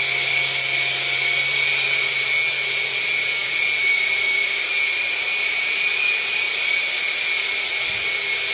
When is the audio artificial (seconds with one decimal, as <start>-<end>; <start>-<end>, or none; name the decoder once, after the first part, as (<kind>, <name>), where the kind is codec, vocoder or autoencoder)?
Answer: 3.8-5.9 (vocoder, BigVGAN v2)